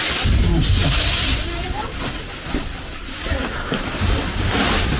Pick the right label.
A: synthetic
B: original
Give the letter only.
A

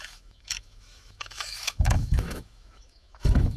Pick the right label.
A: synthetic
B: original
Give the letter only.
A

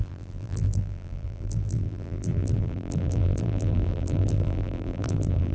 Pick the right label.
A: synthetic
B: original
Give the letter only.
A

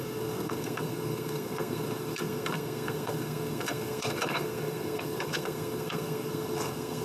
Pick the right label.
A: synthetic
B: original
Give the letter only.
A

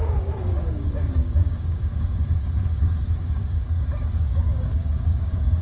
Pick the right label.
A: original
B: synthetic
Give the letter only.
B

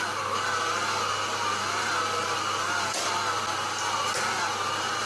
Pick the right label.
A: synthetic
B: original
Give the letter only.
B